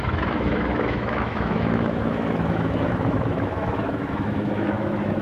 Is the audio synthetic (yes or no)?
yes